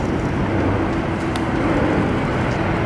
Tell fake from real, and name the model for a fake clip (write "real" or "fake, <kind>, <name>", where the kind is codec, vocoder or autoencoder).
real